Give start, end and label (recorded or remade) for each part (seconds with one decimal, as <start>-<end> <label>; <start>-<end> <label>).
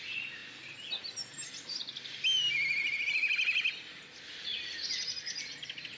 0.0-4.5 recorded; 4.5-6.0 remade